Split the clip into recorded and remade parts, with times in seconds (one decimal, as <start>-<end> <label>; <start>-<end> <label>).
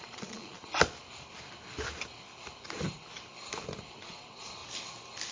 0.0-0.7 remade; 0.7-3.9 recorded; 3.9-4.6 remade; 4.6-5.3 recorded